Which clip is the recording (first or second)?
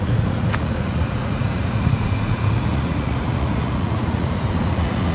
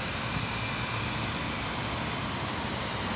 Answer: second